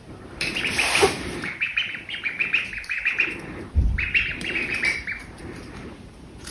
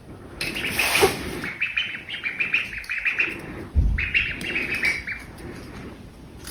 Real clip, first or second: second